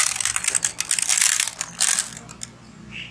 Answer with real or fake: real